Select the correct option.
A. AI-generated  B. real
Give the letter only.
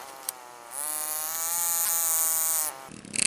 B